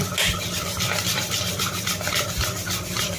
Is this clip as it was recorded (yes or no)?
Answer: no